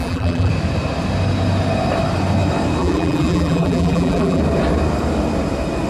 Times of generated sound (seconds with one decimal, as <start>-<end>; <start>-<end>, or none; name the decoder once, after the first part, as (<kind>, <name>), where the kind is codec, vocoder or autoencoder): 0.0-0.5 (vocoder, BigVGAN v2); 2.8-4.4